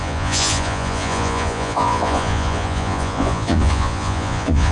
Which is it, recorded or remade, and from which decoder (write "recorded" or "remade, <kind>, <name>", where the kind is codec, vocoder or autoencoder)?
remade, vocoder, Vocos